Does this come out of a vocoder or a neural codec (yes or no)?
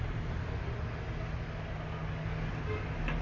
no